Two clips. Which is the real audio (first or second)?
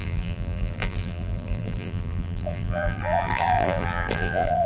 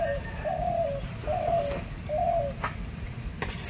second